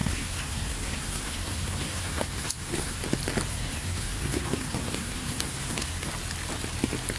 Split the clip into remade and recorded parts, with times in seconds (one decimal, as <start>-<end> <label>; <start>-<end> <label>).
0.0-3.0 remade; 3.0-3.5 recorded; 3.5-6.1 remade; 6.1-7.2 recorded